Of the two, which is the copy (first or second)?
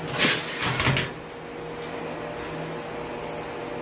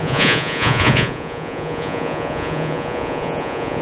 second